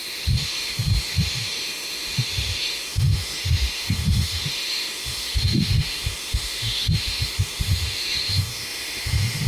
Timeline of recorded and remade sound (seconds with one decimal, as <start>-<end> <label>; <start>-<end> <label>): 0.0-9.5 remade